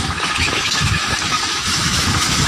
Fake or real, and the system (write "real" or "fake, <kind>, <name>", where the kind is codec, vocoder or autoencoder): fake, autoencoder, DAC-VAE